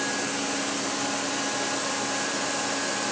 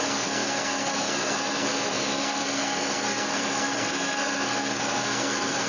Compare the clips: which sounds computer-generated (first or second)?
second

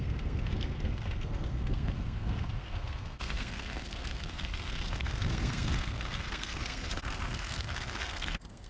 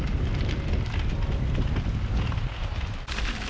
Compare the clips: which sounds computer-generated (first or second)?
first